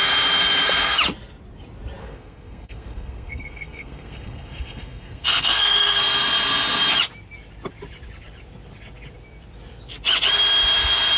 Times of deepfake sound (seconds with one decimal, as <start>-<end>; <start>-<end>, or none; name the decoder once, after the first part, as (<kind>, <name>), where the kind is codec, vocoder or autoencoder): 2.0-6.0 (codec, SNAC)